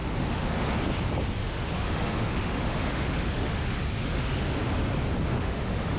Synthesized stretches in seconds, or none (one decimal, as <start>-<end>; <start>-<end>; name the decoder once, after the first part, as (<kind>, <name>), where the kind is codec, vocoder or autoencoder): 0.0-0.7 (autoencoder, DAC-VAE); 1.4-4.6; 5.3-6.0